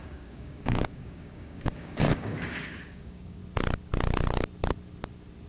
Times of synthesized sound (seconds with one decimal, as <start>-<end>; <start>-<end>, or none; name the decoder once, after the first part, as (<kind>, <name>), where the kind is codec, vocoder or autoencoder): 0.0-3.4 (codec, DAC)